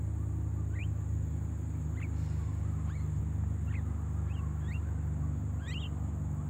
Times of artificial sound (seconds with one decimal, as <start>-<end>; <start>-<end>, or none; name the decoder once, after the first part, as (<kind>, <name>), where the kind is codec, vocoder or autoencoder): 0.8-3.2 (vocoder, BigVGAN v2)